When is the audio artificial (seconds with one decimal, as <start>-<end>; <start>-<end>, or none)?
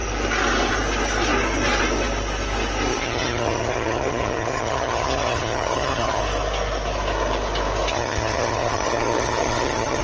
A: 2.9-6.2; 7.9-10.0